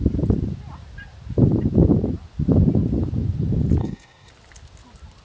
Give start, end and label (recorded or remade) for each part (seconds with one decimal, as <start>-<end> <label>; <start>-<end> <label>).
0.0-3.8 recorded; 3.8-4.3 remade; 4.3-5.2 recorded